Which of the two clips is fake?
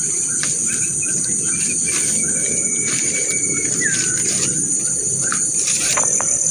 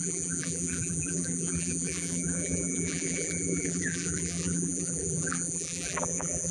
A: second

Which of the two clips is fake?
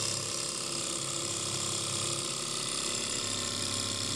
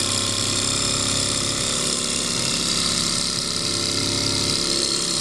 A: second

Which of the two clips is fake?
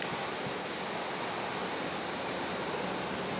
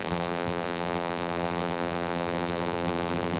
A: second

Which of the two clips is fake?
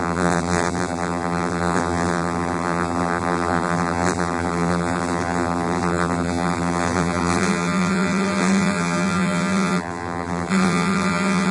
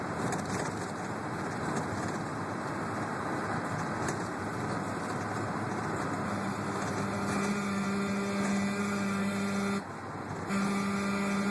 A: first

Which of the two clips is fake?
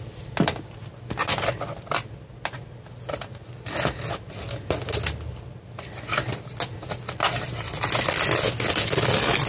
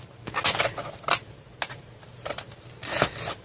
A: second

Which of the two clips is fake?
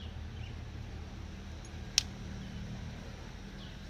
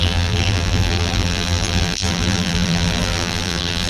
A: second